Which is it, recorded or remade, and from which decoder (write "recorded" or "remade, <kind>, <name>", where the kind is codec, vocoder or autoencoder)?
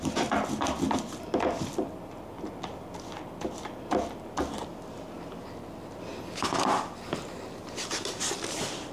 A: recorded